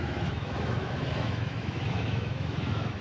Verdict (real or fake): fake